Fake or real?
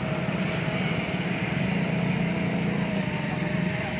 fake